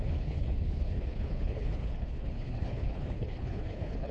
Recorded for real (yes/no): no